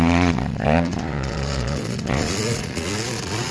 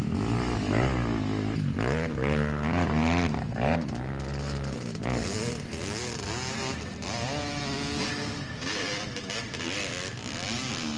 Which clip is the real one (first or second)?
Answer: second